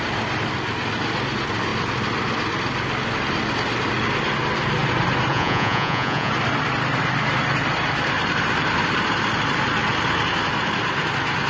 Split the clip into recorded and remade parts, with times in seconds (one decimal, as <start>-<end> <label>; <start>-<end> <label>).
0.0-5.3 recorded; 5.3-6.3 remade; 6.3-11.5 recorded